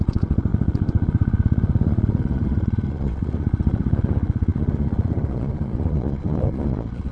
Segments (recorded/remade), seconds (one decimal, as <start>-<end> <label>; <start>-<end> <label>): 0.0-7.1 remade

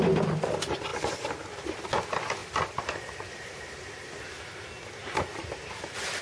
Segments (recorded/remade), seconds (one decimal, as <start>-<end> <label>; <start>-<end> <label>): 0.0-2.4 recorded; 2.4-3.6 remade; 3.6-5.0 recorded; 5.0-5.8 remade; 5.8-6.2 recorded